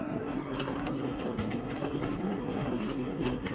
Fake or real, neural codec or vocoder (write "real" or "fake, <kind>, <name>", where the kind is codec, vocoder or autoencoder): fake, codec, SNAC